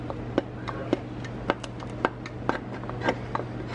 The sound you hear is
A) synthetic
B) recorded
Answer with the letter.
B